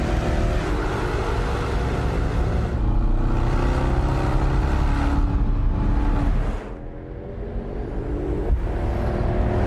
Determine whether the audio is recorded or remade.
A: recorded